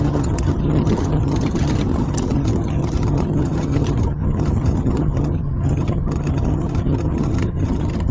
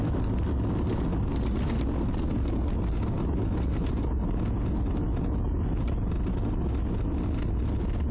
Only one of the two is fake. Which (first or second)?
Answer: first